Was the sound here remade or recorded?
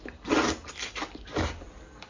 recorded